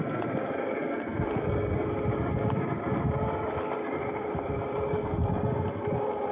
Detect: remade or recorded recorded